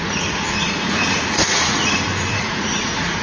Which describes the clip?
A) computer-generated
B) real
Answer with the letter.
A